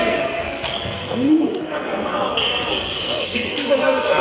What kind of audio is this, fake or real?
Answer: fake